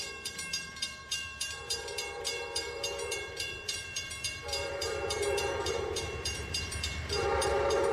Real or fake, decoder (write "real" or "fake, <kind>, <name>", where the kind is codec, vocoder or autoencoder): fake, vocoder, BigVGAN v2